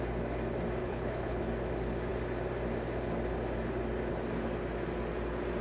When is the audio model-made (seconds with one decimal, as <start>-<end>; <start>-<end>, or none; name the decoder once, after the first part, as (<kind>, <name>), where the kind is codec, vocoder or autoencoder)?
0.8-1.4 (codec, HILCodec)